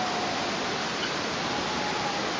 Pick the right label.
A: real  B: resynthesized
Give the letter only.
A